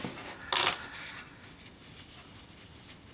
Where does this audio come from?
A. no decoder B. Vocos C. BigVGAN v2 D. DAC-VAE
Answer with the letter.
A